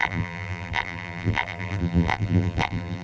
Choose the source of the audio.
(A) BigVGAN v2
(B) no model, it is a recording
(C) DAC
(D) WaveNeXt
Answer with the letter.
A